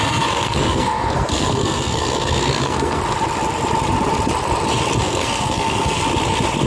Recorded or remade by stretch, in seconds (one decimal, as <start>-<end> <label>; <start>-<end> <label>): 0.0-3.0 remade; 3.0-5.0 recorded; 5.0-6.0 remade; 6.0-6.7 recorded